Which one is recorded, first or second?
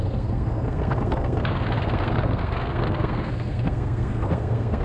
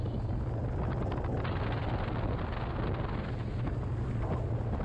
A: second